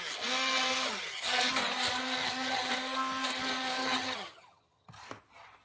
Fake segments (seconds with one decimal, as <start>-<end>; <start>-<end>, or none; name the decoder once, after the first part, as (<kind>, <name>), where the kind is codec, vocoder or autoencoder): 0.7-1.4 (vocoder, HiFi-GAN); 2.2-2.7; 3.8-4.9